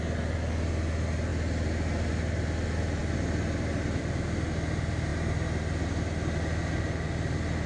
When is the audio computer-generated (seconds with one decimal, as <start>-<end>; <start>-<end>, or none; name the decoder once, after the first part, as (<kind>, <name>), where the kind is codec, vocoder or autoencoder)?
none